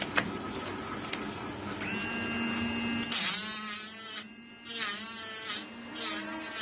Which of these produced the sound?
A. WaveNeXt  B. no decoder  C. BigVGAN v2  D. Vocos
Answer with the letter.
B